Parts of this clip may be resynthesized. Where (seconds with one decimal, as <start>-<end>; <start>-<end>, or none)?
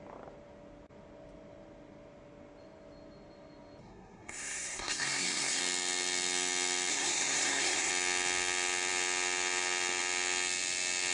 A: 3.8-5.6; 6.9-7.9